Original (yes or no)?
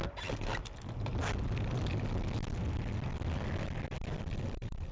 yes